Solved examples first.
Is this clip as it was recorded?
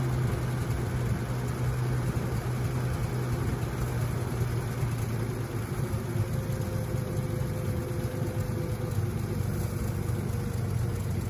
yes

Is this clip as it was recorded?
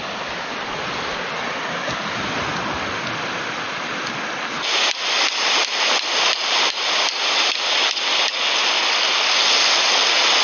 yes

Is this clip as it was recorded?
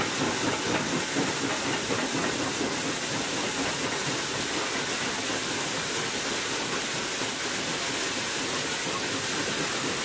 yes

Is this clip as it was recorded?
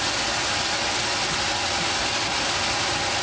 yes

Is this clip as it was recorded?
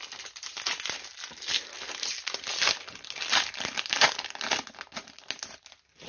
yes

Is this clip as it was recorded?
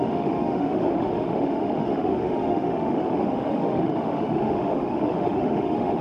no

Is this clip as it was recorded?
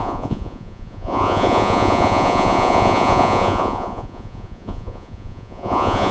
no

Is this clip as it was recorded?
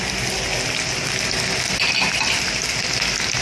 yes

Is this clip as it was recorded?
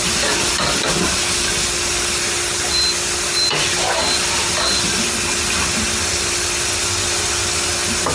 yes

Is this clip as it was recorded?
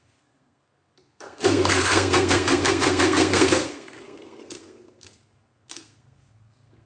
no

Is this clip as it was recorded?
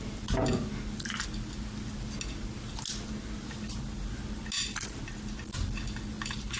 yes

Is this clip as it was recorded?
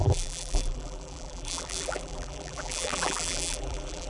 no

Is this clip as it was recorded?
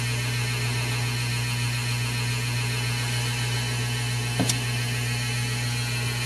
yes